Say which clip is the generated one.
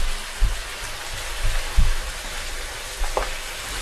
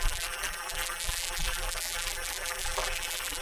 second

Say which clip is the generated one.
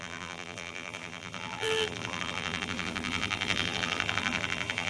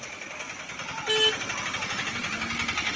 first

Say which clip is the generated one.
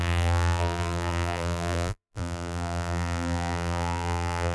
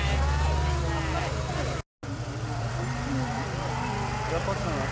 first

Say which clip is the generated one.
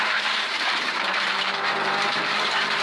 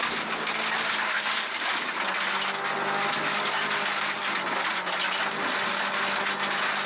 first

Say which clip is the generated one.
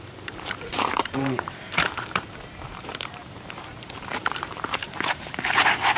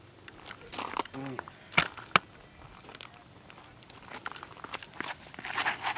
first